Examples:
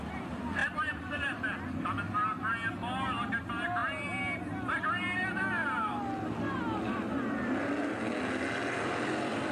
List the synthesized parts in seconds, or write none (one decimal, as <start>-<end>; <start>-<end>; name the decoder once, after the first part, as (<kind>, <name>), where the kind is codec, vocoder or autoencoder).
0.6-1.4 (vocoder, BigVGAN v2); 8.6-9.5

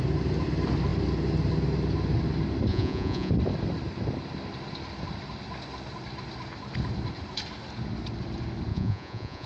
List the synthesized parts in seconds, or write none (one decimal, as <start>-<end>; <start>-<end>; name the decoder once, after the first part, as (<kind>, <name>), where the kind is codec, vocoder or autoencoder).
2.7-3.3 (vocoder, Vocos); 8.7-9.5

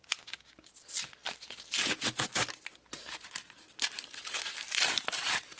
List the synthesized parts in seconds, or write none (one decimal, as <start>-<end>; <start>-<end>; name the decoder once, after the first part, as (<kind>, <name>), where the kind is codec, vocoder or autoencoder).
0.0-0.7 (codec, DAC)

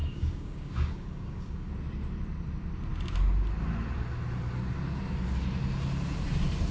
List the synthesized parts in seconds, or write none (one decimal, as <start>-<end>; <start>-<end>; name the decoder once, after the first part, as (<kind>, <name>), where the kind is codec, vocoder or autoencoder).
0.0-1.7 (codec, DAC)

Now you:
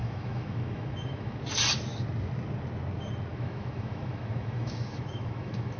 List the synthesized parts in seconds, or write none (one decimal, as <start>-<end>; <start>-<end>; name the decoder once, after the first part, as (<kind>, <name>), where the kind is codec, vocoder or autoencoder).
0.0-1.4 (autoencoder, DAC-VAE); 3.3-5.8

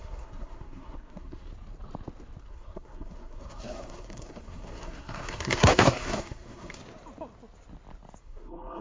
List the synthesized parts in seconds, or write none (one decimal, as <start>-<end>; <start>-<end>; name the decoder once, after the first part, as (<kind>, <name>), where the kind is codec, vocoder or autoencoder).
0.0-1.5 (codec, SNAC); 2.4-6.8; 8.2-8.8

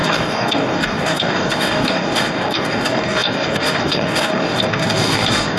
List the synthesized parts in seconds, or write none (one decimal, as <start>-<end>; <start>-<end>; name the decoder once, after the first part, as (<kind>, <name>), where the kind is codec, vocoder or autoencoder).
0.0-5.6 (codec, DAC)

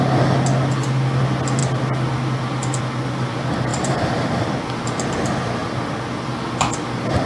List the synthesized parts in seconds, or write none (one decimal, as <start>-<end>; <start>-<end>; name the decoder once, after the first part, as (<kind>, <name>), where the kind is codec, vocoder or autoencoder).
3.7-4.5 (vocoder, BigVGAN v2)